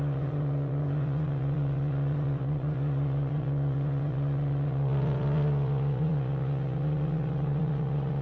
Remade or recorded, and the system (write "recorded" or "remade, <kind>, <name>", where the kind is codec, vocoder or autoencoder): remade, vocoder, Vocos